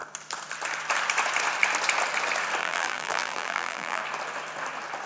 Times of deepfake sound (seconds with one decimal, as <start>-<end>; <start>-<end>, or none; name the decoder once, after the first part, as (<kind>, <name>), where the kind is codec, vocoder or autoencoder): 2.6-4.0 (vocoder, BigVGAN v2)